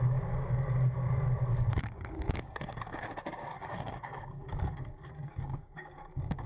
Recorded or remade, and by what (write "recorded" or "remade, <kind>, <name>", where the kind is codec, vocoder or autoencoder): remade, codec, DAC